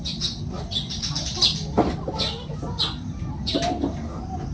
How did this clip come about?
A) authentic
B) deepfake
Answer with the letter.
A